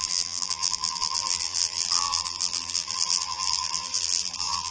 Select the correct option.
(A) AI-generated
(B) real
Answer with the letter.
A